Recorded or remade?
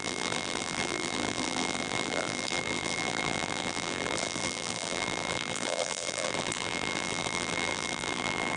remade